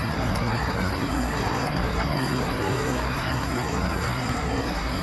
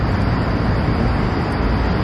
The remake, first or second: first